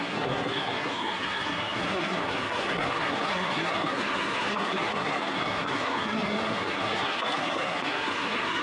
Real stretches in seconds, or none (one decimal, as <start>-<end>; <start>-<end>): none